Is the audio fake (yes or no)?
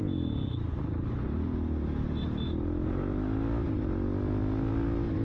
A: no